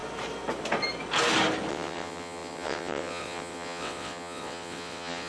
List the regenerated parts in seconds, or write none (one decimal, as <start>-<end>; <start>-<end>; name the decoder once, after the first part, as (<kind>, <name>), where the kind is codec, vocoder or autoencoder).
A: 1.7-5.3 (vocoder, WaveNeXt)